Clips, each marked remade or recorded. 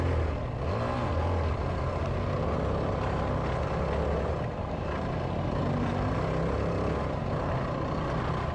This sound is recorded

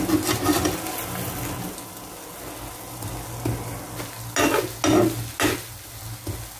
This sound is recorded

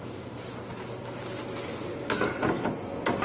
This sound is recorded